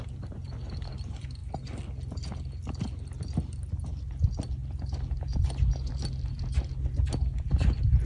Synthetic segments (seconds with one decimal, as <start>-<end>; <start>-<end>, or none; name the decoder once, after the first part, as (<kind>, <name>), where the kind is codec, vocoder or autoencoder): none